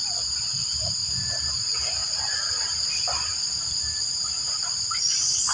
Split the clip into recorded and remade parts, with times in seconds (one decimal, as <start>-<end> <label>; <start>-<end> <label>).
0.0-5.5 recorded

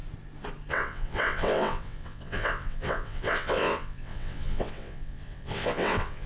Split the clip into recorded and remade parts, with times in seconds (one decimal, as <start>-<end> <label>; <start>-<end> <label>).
0.0-0.7 recorded; 0.7-6.3 remade